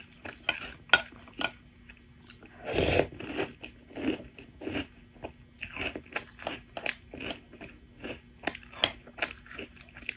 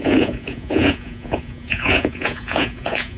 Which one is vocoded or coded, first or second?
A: second